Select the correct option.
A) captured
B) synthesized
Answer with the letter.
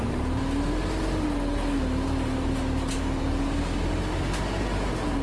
A